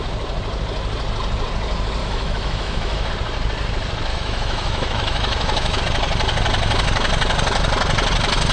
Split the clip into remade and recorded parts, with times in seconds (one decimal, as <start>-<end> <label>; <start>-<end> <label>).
0.0-2.0 recorded; 2.0-3.1 remade; 3.1-4.1 recorded; 4.1-5.8 remade; 5.8-8.5 recorded